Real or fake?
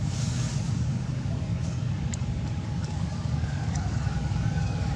fake